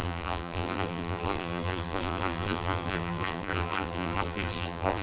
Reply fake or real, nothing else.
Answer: fake